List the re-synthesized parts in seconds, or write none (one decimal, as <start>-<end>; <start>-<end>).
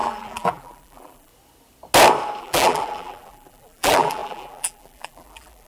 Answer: 0.0-1.3; 2.4-5.7